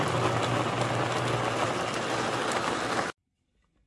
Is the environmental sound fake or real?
real